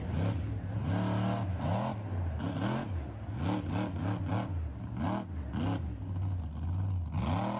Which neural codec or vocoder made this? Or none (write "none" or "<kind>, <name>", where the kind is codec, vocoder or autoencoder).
none